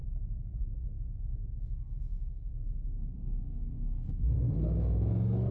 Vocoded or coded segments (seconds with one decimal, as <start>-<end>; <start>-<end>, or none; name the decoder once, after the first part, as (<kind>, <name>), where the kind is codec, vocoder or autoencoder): 0.6-5.5 (codec, SNAC)